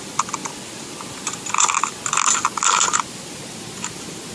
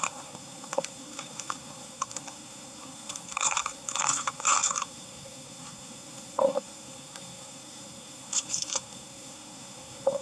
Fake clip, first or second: second